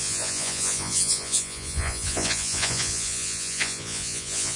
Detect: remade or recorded remade